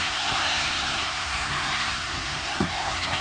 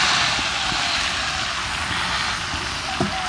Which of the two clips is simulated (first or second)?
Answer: first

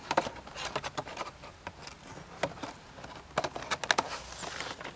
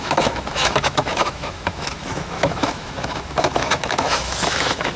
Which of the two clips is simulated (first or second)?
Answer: second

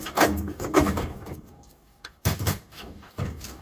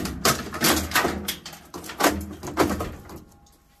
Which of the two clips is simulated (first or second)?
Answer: first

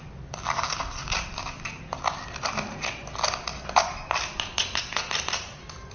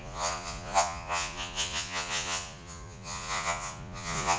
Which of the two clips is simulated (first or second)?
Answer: second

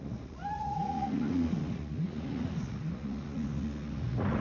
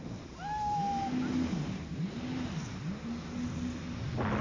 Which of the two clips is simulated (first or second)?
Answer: first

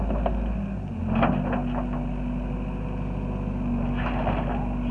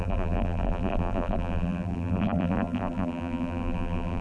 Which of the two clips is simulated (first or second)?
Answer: second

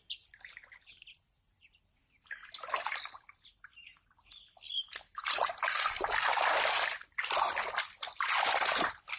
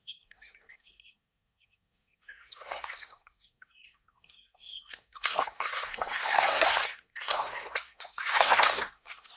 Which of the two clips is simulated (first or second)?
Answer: second